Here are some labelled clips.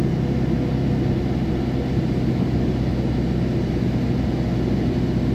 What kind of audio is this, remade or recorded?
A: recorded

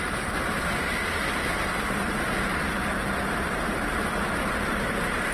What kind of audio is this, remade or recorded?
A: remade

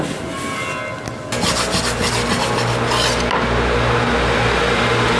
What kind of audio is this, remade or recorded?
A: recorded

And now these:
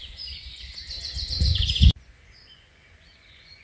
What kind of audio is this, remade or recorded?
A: remade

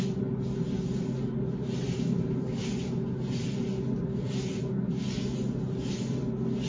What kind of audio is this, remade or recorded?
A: recorded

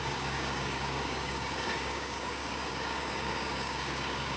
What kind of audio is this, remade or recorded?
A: remade